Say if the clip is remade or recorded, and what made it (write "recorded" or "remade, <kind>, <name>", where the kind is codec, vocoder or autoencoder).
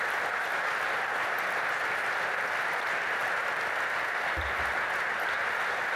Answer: recorded